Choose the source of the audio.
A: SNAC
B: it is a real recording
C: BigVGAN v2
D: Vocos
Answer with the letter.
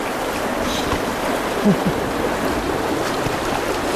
B